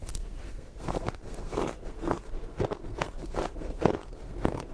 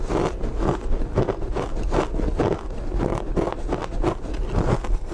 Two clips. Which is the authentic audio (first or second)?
second